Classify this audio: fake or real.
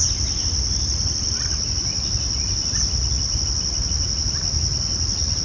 real